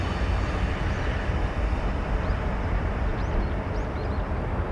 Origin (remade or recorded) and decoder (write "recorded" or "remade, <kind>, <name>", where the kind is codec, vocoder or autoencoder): recorded